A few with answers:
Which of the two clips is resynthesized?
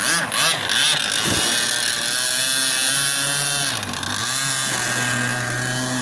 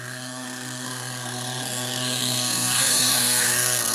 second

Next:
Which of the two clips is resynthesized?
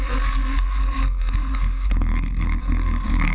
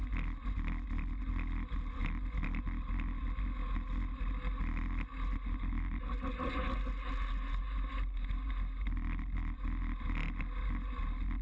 first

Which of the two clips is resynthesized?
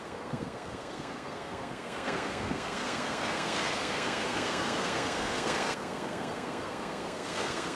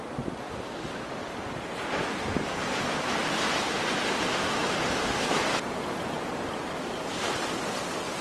first